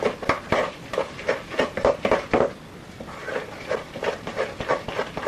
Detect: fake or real real